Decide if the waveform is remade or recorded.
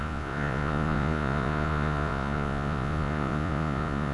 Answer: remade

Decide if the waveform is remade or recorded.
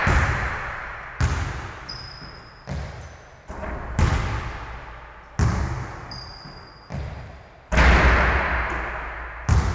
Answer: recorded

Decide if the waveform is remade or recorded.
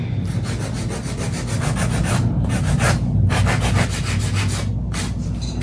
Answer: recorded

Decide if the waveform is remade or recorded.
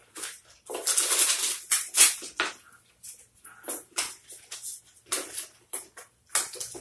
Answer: recorded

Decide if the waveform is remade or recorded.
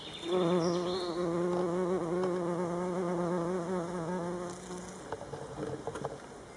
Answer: recorded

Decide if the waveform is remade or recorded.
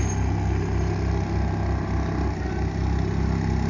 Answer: recorded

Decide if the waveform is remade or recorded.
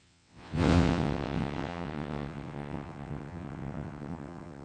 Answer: remade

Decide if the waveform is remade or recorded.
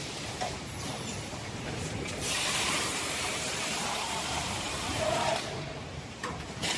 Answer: remade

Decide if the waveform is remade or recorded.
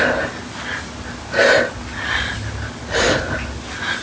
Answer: recorded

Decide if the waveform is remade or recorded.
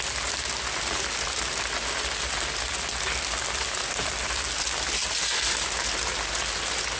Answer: recorded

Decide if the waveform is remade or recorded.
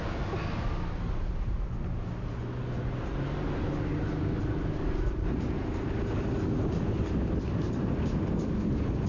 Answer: recorded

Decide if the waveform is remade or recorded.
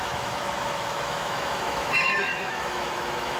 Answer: remade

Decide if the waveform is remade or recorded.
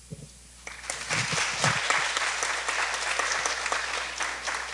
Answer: recorded